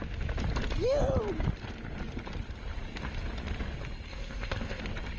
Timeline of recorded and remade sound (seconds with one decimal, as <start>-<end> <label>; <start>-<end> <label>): 0.0-4.1 recorded; 4.1-4.8 remade; 4.8-5.2 recorded